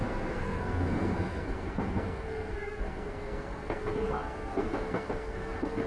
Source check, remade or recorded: remade